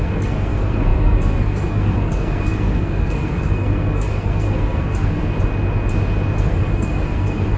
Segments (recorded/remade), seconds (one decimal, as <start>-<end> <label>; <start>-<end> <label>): 0.0-5.3 remade; 5.3-6.4 recorded; 6.4-7.6 remade